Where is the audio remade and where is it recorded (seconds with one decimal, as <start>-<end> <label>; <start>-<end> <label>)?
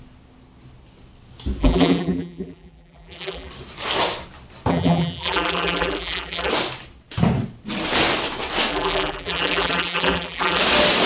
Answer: 0.0-1.6 recorded; 1.6-3.5 remade; 3.5-4.7 recorded; 4.7-6.5 remade; 6.5-8.7 recorded; 8.7-10.6 remade; 10.6-11.1 recorded